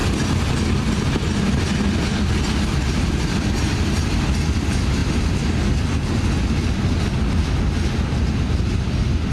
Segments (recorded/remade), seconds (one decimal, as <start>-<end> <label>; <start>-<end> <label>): 0.0-9.3 recorded